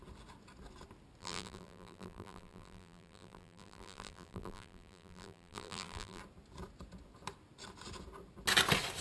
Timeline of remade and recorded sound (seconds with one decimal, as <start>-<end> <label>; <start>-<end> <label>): 0.0-1.2 recorded; 1.2-6.2 remade; 6.2-9.0 recorded